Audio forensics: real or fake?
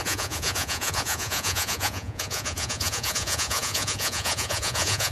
fake